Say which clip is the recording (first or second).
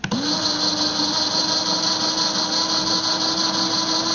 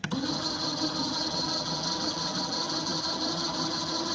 first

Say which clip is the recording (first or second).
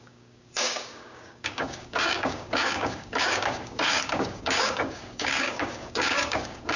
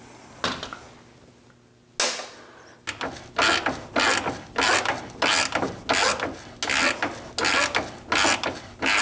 second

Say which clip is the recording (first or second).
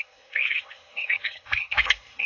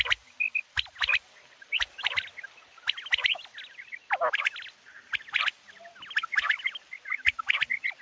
second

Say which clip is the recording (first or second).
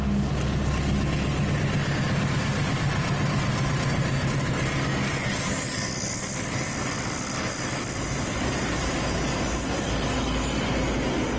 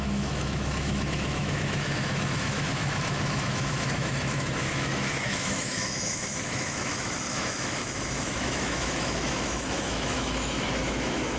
first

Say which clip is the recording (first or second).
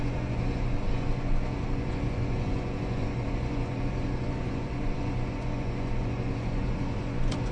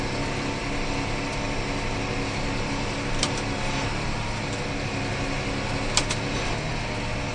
second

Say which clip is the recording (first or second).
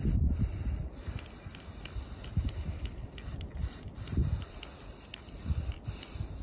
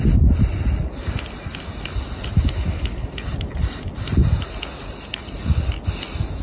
second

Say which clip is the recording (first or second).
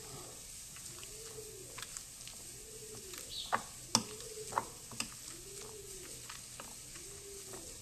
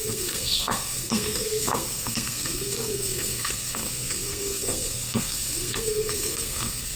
first